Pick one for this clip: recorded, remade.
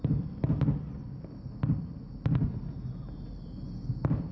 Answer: recorded